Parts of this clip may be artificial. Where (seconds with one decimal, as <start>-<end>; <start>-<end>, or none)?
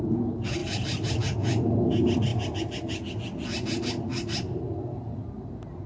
none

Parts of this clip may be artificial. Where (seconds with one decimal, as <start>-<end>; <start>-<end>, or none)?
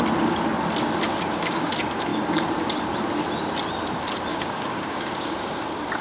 1.1-1.7; 4.3-6.0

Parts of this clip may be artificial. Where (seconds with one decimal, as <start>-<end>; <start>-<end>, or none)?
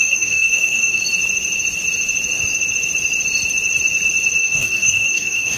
0.0-1.0; 4.4-5.6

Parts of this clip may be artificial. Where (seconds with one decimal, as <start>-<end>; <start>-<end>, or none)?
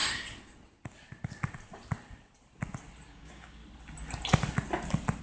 3.1-3.6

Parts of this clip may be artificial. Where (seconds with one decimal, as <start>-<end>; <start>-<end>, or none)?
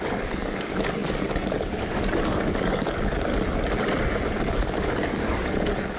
0.0-3.3; 4.5-6.0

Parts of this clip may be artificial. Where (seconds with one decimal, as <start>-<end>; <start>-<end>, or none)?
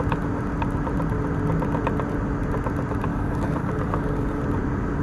3.1-4.4